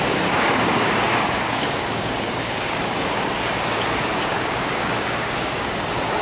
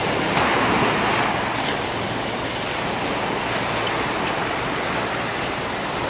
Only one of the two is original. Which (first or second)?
second